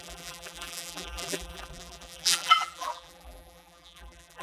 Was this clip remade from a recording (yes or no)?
yes